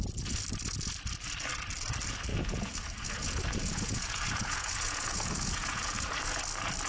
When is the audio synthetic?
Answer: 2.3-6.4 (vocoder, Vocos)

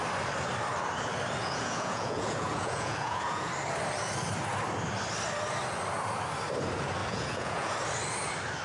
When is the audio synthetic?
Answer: 1.4-3.5 (vocoder, Vocos); 7.0-7.7

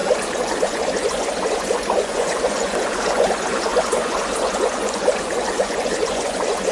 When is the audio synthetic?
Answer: 0.0-6.7 (vocoder, Vocos)

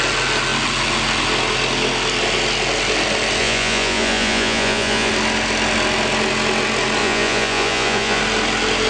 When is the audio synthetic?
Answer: 3.4-5.1 (vocoder, Vocos); 7.0-8.2

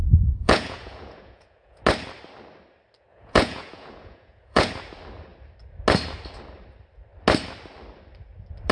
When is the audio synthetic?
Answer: 0.0-1.8 (vocoder, Vocos); 3.1-4.7